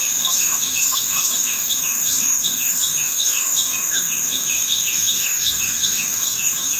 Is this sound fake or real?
fake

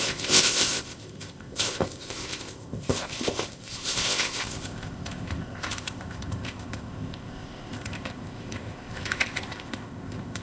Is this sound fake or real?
fake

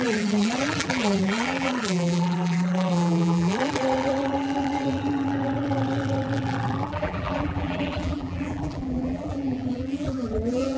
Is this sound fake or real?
fake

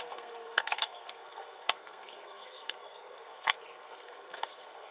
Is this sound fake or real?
fake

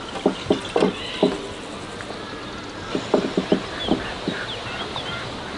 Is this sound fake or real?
real